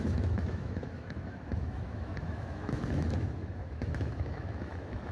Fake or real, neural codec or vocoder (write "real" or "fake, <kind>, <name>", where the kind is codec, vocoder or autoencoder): fake, autoencoder, DAC-VAE